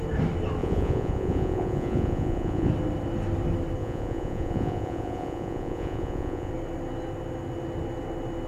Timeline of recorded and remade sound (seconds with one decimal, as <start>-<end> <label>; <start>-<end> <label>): 0.0-0.6 recorded; 0.6-2.7 remade; 2.7-3.8 recorded; 3.8-6.5 remade; 6.5-8.5 recorded

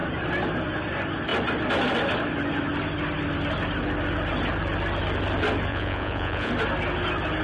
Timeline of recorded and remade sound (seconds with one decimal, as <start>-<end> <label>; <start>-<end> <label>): 0.0-5.7 recorded; 5.7-6.5 remade; 6.5-7.4 recorded

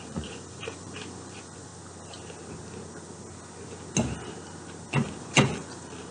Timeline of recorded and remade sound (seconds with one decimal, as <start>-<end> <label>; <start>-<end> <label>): 0.0-1.7 remade; 1.7-5.2 recorded; 5.2-6.1 remade

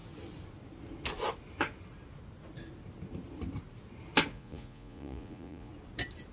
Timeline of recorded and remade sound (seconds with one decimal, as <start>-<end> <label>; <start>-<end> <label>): 0.0-4.3 recorded; 4.3-5.7 remade; 5.7-6.3 recorded

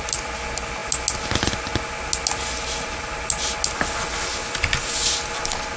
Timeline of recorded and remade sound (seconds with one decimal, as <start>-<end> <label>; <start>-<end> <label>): 0.0-5.8 recorded

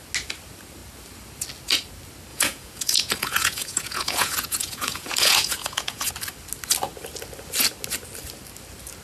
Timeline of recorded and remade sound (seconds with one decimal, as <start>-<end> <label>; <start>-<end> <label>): 0.0-2.3 recorded; 2.3-6.1 remade; 6.1-9.0 recorded